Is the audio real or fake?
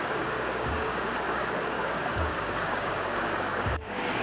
fake